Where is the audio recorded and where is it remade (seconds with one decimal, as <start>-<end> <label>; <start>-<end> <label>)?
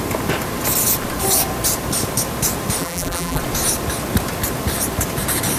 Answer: 0.0-2.8 recorded; 2.8-3.4 remade; 3.4-5.6 recorded